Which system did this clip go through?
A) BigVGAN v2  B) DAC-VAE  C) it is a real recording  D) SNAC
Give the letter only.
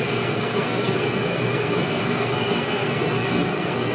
D